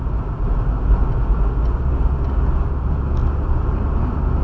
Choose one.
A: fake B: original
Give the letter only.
B